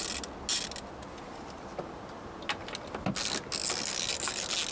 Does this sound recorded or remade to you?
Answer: recorded